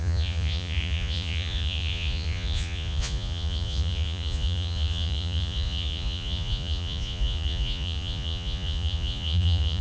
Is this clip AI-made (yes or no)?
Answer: yes